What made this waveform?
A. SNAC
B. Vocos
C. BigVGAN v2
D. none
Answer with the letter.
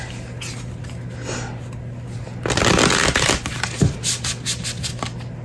D